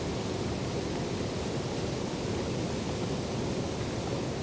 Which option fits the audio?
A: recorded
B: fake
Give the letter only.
A